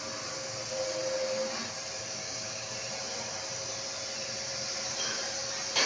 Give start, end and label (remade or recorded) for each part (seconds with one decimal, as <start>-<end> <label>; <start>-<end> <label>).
0.0-2.2 recorded; 2.2-2.7 remade; 2.7-5.9 recorded